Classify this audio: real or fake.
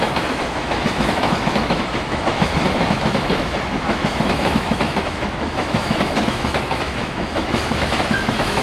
fake